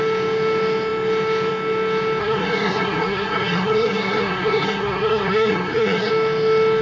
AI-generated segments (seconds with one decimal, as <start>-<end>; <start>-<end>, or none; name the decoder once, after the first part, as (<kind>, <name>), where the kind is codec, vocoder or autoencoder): 2.2-6.1 (codec, SNAC)